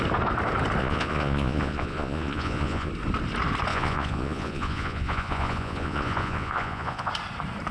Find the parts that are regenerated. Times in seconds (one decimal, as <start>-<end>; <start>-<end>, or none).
0.8-2.9; 3.7-7.1